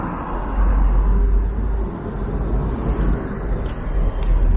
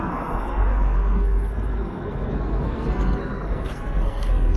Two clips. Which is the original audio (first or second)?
first